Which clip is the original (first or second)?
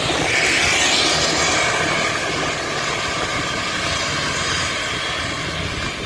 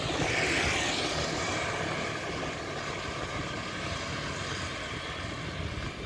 first